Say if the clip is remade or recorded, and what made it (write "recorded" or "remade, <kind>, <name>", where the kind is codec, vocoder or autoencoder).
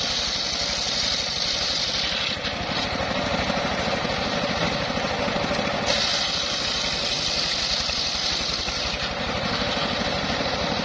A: recorded